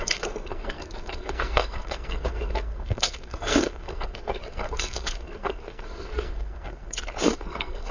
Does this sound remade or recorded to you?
remade